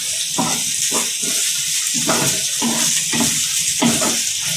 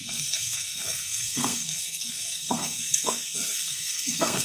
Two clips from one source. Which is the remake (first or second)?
second